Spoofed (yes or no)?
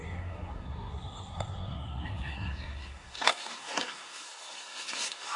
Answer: yes